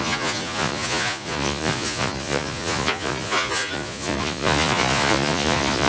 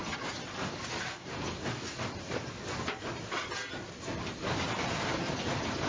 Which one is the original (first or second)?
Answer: second